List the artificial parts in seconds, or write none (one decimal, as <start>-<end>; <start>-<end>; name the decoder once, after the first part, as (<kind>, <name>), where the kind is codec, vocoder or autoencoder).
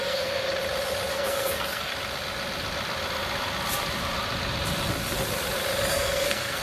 0.0-0.5 (codec, SNAC); 1.1-1.9; 5.9-6.6